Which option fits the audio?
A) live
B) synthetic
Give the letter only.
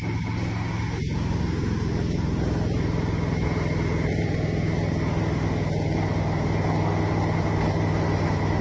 A